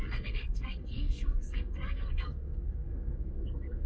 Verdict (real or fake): fake